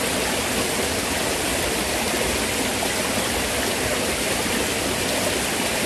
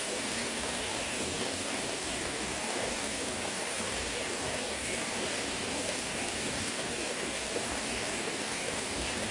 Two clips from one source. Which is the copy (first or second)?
second